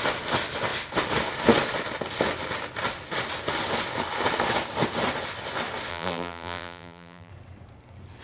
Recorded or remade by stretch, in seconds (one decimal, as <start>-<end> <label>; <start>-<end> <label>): 0.0-5.9 recorded; 5.9-7.3 remade; 7.3-8.2 recorded